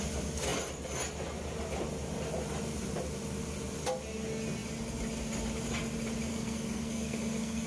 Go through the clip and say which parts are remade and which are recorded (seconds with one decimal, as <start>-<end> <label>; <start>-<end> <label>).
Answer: 0.0-6.3 recorded; 6.3-7.7 remade